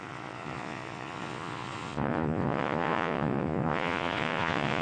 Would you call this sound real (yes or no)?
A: no